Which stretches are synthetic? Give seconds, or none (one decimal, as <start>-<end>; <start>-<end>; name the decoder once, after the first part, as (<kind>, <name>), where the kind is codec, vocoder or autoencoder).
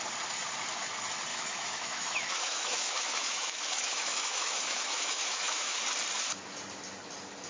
1.3-5.8 (autoencoder, DAC-VAE)